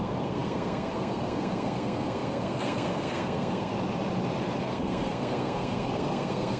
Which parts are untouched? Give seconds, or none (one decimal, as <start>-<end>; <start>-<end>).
3.7-4.6